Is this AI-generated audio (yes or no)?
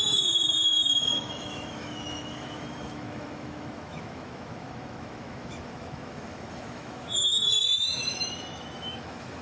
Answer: yes